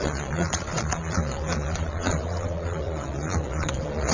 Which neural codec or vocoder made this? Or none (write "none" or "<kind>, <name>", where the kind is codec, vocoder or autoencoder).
vocoder, Vocos